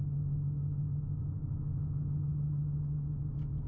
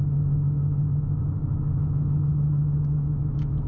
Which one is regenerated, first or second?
second